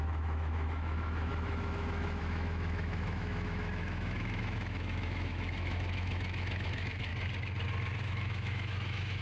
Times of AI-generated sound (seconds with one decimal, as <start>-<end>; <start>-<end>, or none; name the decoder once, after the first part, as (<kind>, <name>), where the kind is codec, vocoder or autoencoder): 0.0-7.1 (autoencoder, DAC-VAE); 8.0-9.2